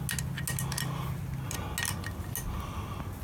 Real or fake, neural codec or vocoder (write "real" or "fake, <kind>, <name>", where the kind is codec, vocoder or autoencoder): real